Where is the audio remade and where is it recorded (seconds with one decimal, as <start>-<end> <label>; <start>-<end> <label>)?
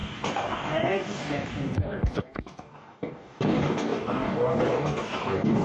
0.0-5.6 remade